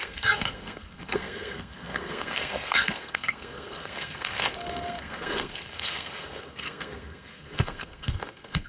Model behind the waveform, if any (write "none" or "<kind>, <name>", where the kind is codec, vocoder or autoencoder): codec, SNAC